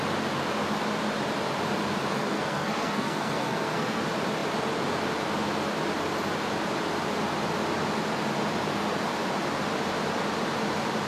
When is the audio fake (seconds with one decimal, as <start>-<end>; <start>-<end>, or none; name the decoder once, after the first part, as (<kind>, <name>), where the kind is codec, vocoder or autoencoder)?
2.1-4.0 (codec, SNAC)